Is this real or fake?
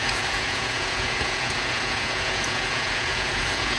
fake